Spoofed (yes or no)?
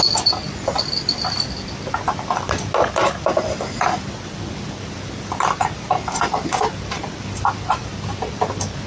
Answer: no